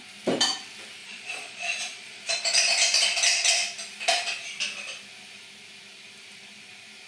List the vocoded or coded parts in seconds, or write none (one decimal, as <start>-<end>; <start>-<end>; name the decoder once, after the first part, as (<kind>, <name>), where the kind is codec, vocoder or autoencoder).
1.0-2.2 (vocoder, Vocos)